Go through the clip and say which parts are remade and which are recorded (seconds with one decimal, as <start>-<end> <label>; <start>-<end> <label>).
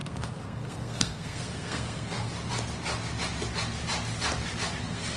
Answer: 0.0-2.3 remade; 2.3-4.8 recorded; 4.8-5.2 remade